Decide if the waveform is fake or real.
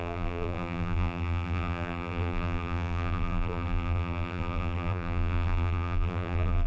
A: fake